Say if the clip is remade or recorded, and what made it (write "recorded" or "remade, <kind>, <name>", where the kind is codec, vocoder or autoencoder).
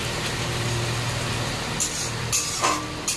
recorded